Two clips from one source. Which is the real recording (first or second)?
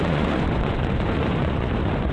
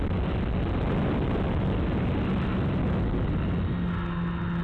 second